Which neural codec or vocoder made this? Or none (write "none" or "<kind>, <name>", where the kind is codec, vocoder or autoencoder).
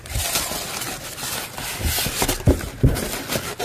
none